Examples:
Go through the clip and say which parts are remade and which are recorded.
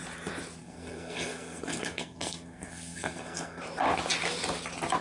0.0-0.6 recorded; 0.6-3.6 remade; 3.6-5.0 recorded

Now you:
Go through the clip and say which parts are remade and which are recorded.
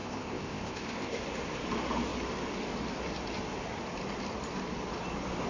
0.0-1.2 remade; 1.2-5.5 recorded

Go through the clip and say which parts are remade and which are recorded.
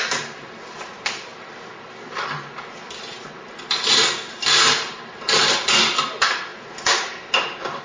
0.0-7.8 recorded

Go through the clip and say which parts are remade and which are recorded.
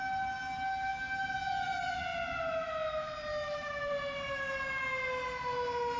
0.0-3.3 recorded; 3.3-3.9 remade; 3.9-6.0 recorded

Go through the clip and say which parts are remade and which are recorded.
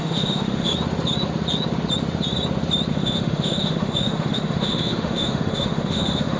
0.0-0.7 remade; 0.7-2.9 recorded; 2.9-6.4 remade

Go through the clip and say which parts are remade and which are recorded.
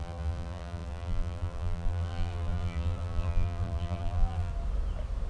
0.0-4.5 remade; 4.5-5.3 recorded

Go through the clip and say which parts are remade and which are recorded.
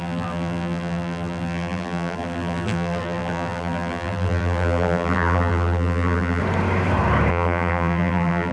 0.0-6.4 remade; 6.4-7.3 recorded; 7.3-8.5 remade